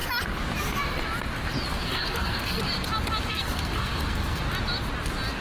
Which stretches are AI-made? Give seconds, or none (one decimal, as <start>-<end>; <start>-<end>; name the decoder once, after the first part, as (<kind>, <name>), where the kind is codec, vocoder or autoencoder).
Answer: 1.7-2.6 (codec, SNAC); 3.3-4.4